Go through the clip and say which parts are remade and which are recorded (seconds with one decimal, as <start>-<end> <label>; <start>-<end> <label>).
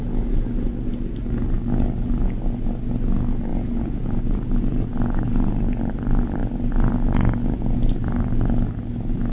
0.0-3.5 recorded; 3.5-5.9 remade; 5.9-9.3 recorded